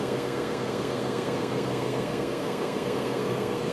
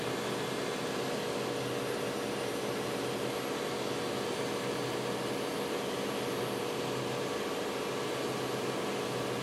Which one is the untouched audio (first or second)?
second